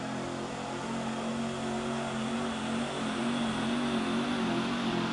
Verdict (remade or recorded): recorded